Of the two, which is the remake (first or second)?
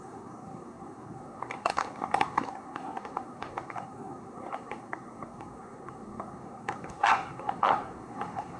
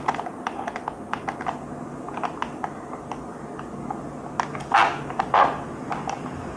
first